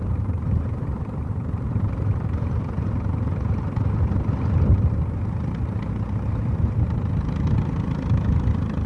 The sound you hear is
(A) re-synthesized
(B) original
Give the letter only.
A